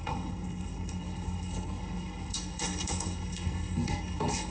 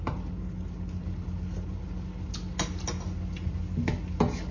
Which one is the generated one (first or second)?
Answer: first